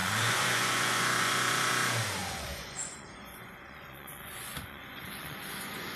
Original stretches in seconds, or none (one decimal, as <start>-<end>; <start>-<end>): 1.7-2.2